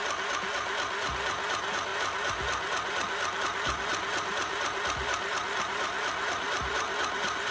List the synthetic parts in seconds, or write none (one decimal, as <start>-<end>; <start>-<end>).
none